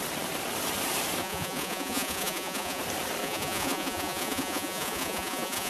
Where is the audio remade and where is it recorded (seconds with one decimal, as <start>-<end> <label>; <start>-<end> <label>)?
0.0-1.2 recorded; 1.2-2.8 remade; 2.8-3.2 recorded; 3.2-5.7 remade